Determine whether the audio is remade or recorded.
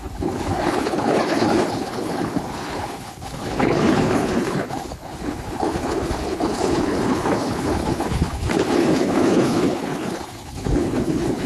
remade